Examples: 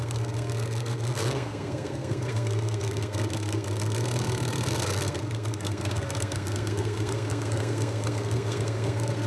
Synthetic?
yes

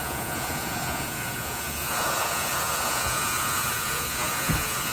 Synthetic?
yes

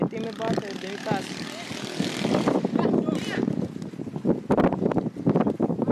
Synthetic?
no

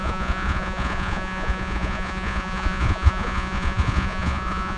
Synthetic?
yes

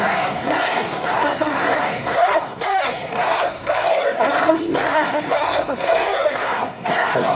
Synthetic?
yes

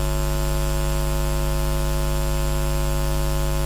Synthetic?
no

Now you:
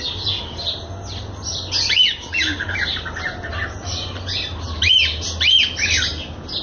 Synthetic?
no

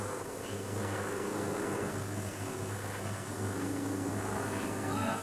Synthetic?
yes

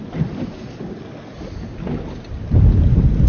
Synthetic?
no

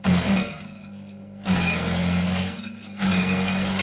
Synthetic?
yes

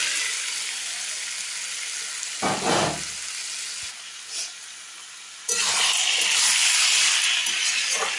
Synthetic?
no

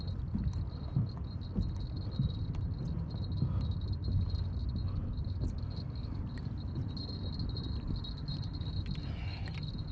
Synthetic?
no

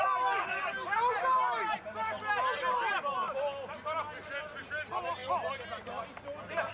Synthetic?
no